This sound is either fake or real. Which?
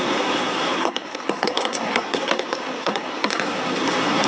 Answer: fake